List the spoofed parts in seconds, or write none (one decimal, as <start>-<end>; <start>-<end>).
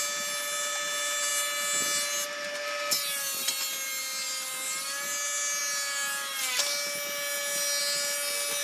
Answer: none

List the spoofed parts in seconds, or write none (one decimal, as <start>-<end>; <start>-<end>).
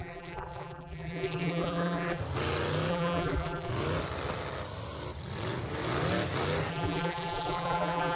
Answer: 0.0-2.2; 2.9-3.7; 6.7-8.2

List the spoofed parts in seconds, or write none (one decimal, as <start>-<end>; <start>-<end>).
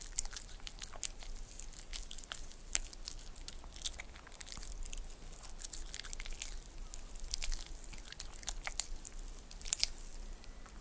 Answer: 1.9-2.5; 10.1-10.8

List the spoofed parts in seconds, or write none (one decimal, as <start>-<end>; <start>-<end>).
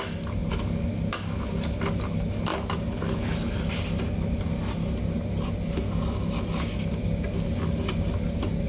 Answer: none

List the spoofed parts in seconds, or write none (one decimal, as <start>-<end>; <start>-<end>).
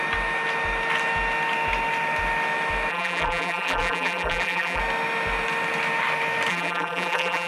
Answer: 2.9-4.8; 6.5-7.5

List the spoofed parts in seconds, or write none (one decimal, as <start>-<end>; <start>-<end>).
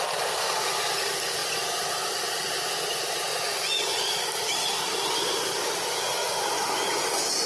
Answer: 3.3-4.3; 6.2-6.7